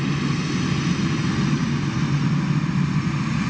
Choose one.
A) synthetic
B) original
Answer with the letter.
B